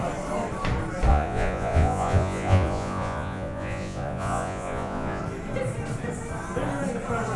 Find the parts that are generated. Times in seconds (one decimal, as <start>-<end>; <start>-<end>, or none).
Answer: 1.1-5.2